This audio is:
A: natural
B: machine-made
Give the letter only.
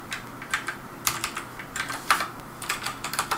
B